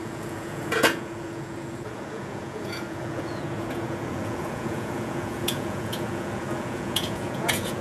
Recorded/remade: remade